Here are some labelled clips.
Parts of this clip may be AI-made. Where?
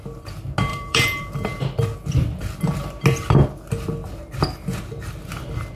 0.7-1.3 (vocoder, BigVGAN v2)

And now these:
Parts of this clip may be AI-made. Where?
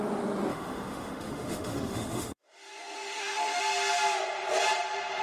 0.5-3.6 (autoencoder, DAC-VAE)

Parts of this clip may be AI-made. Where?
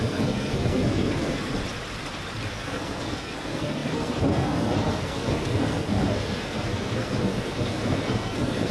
0.0-1.5 (codec, SNAC); 2.5-8.7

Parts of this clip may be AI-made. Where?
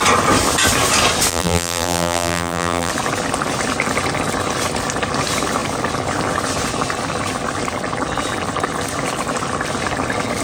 1.3-2.9 (vocoder, BigVGAN v2)